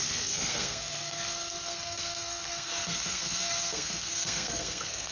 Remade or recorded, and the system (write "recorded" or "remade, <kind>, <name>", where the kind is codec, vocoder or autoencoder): remade, codec, SNAC